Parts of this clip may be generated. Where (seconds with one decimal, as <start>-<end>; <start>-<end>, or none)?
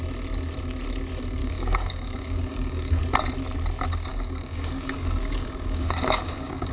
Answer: 1.4-3.0; 4.1-6.7